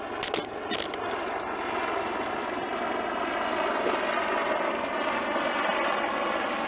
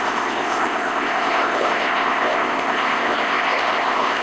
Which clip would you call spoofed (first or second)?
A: second